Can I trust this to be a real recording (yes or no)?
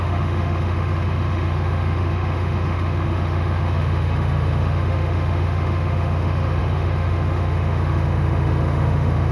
no